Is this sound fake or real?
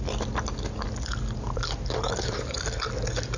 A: real